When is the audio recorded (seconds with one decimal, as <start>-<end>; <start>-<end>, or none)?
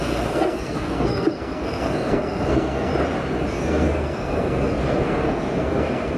2.9-3.5